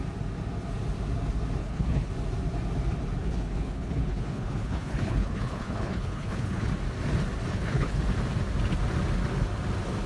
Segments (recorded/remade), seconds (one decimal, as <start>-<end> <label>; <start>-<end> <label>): 0.0-1.6 recorded; 1.6-2.1 remade; 2.1-3.2 recorded; 3.2-6.7 remade; 6.7-7.5 recorded; 7.5-8.0 remade; 8.0-10.1 recorded